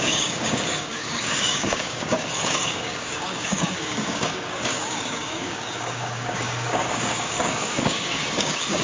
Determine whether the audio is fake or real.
fake